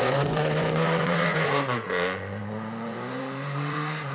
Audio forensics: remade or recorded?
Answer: remade